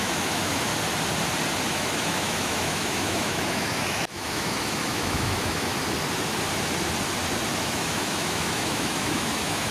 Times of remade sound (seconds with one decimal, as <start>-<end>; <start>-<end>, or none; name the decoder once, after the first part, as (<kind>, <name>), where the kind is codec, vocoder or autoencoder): 0.0-0.7 (autoencoder, DAC-VAE); 1.7-5.7; 7.6-9.7